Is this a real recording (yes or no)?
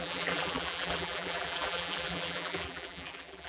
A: no